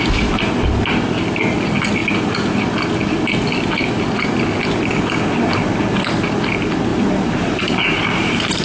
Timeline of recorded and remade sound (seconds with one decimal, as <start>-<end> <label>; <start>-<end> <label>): 0.0-6.9 recorded; 6.9-8.6 remade